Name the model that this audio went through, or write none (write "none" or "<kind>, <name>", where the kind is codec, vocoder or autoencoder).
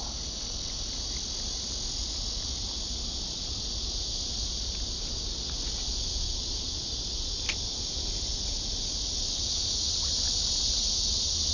none